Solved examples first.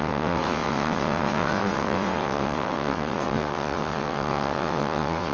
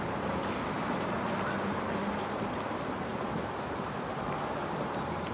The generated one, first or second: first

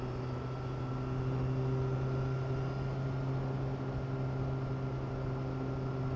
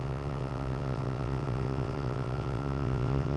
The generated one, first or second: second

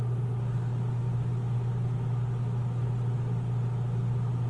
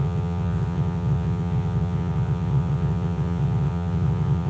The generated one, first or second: second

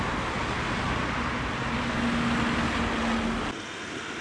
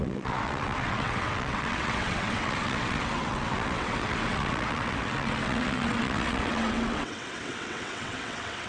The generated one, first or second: second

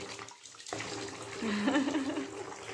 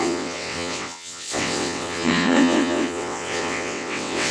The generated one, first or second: second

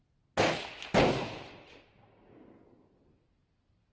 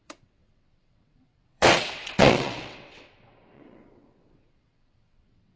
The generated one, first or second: second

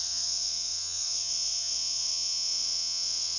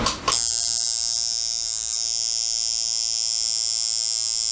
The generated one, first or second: first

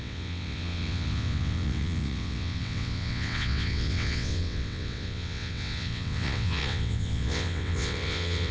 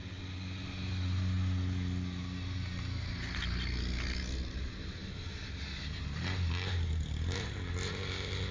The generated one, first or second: first